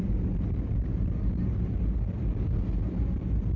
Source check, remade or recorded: recorded